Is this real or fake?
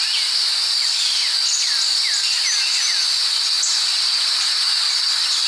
real